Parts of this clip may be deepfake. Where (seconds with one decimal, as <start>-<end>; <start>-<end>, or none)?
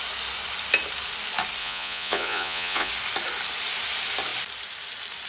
1.6-2.9